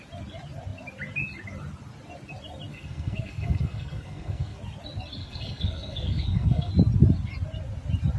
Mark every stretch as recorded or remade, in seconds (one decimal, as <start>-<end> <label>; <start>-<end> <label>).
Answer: 0.0-2.7 recorded; 2.7-4.6 remade; 4.6-5.2 recorded; 5.2-6.7 remade; 6.7-8.2 recorded